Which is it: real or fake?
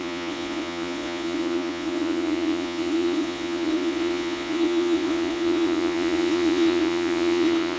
fake